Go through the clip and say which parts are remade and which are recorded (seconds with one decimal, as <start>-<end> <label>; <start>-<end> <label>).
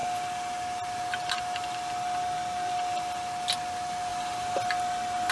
0.0-5.3 recorded